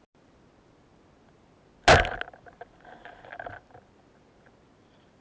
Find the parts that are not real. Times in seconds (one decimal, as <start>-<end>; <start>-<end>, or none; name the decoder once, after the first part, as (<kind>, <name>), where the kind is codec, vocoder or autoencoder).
none